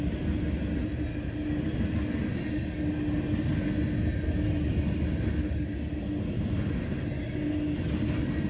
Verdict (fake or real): real